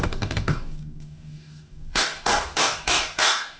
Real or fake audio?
fake